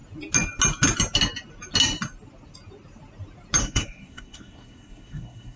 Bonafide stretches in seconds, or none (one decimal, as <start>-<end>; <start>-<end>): 0.0-3.6